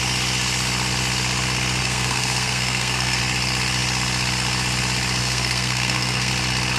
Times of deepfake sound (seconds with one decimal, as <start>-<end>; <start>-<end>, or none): 1.8-3.2; 5.2-6.3

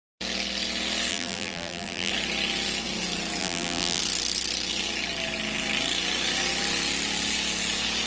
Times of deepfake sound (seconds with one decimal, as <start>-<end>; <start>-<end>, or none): 1.1-2.1; 3.4-4.0

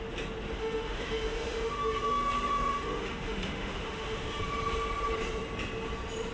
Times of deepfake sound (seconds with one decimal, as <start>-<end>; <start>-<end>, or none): 0.6-4.4

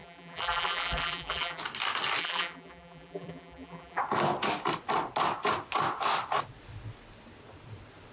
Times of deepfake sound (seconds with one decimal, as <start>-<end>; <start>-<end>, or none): 0.0-1.6; 2.2-4.0

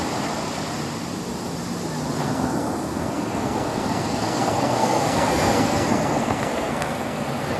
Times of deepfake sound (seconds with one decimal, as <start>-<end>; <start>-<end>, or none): 2.2-7.6